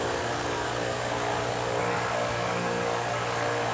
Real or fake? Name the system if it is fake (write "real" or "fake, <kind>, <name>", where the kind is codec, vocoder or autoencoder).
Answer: fake, codec, DAC